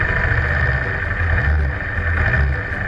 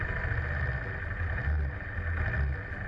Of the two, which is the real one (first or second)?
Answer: first